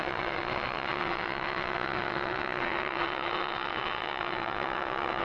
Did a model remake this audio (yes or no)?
yes